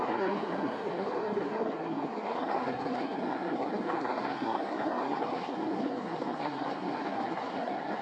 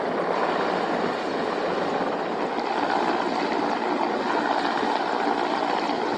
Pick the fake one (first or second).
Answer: first